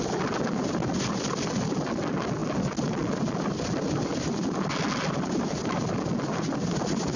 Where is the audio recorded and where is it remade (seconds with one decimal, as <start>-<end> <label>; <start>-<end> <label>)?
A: 0.0-7.2 recorded